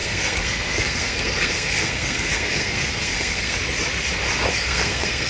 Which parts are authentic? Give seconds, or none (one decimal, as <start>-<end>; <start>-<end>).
3.6-4.5